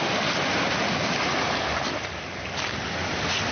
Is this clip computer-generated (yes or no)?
no